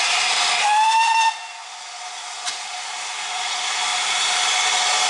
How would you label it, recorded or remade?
recorded